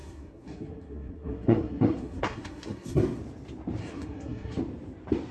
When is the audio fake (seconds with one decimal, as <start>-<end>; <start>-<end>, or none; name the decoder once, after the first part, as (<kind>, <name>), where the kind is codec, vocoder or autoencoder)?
0.0-3.2 (codec, SNAC); 3.8-4.6